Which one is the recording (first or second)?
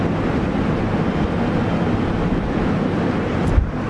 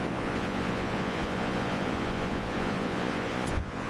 first